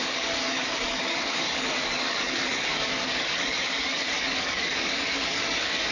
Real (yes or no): no